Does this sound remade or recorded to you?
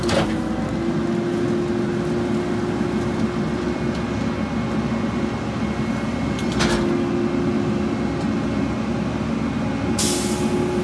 recorded